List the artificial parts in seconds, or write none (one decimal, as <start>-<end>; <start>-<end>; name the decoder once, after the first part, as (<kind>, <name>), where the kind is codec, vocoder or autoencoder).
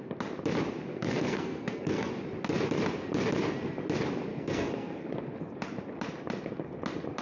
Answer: 0.9-2.1 (codec, SNAC); 4.3-5.1